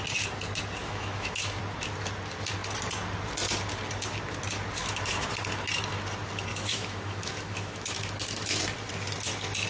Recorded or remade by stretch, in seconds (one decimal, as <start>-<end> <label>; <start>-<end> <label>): 0.0-0.8 recorded; 0.8-1.6 remade; 1.6-4.8 recorded; 4.8-5.3 remade; 5.3-6.5 recorded; 6.5-8.6 remade; 8.6-9.7 recorded

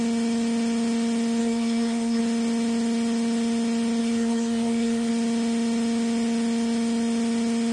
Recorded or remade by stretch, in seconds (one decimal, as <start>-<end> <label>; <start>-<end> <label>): 0.0-1.4 recorded; 1.4-2.2 remade; 2.2-4.0 recorded; 4.0-5.1 remade; 5.1-7.7 recorded

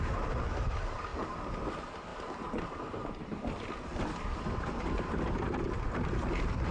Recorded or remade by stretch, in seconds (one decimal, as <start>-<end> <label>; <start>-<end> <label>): 0.0-6.7 recorded

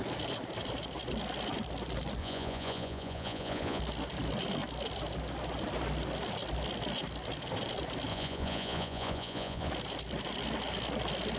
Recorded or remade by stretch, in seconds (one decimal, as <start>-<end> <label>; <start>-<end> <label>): 0.0-2.2 recorded; 2.2-3.8 remade; 3.8-8.1 recorded; 8.1-9.7 remade; 9.7-11.4 recorded

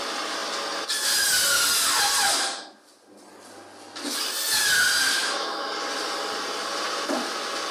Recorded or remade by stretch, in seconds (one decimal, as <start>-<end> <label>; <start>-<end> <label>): 0.0-5.2 recorded; 5.2-5.7 remade; 5.7-7.7 recorded

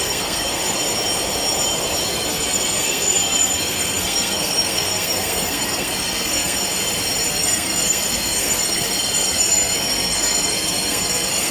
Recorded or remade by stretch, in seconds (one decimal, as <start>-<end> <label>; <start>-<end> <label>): 0.0-0.6 remade; 0.6-2.1 recorded; 2.1-6.7 remade; 6.7-7.3 recorded; 7.3-11.5 remade